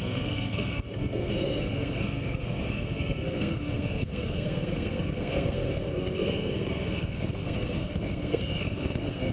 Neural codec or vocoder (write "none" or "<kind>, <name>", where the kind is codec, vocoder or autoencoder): codec, SNAC